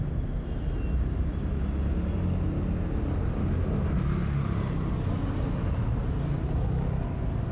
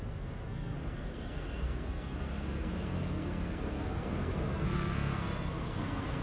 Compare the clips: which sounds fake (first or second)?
second